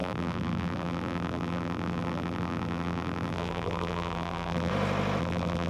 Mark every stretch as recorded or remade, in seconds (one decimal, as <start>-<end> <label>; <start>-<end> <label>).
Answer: 0.0-4.7 remade; 4.7-5.2 recorded; 5.2-5.7 remade